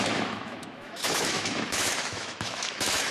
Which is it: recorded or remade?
remade